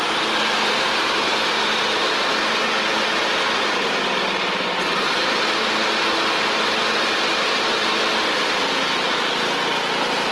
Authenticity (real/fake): real